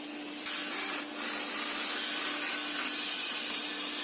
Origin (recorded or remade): recorded